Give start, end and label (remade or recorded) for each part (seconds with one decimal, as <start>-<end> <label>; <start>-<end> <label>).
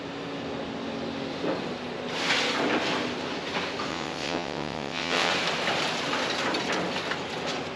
0.0-3.9 recorded; 3.9-5.3 remade; 5.3-7.8 recorded